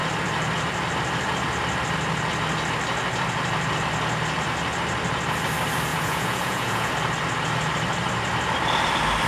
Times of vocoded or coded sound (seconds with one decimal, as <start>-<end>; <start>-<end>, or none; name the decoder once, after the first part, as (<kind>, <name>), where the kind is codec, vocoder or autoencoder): 5.9-6.9 (vocoder, Vocos)

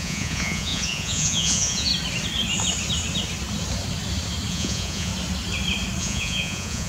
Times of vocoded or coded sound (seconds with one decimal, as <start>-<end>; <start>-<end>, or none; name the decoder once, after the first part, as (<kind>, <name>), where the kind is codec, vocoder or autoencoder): 0.0-1.9 (vocoder, Vocos); 4.5-5.1; 6.0-6.9

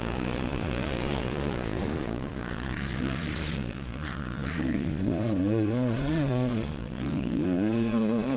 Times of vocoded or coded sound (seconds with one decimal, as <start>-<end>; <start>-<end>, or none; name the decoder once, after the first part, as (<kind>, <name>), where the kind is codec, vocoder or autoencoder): 0.0-8.4 (vocoder, Vocos)